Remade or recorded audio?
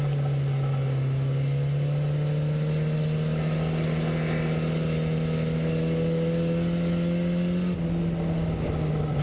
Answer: recorded